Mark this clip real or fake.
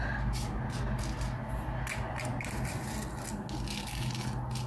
real